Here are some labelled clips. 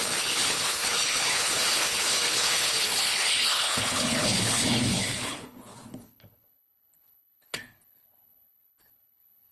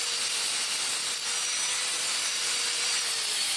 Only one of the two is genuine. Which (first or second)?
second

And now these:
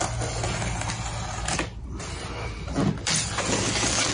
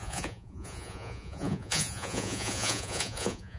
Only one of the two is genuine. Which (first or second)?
first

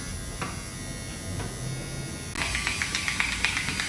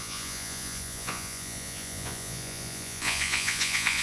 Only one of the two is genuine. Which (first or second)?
first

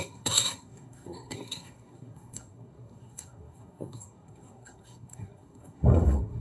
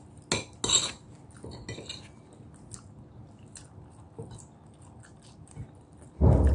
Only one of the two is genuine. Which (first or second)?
second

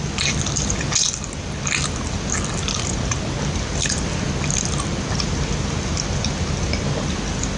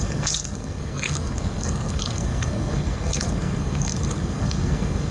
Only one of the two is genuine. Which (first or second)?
first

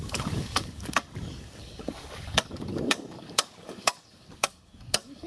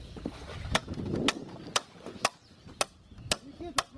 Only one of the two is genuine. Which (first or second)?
second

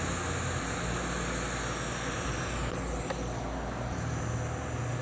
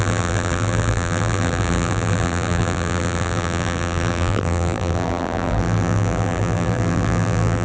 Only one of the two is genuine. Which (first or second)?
first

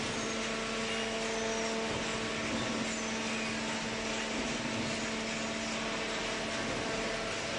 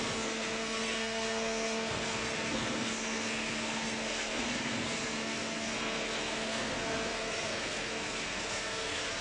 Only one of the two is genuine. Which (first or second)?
first